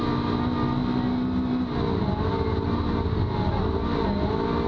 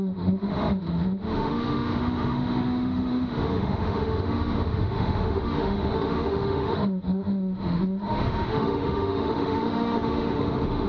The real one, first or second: first